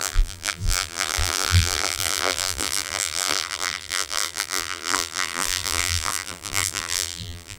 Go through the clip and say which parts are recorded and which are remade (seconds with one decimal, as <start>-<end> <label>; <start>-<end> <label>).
0.0-7.6 remade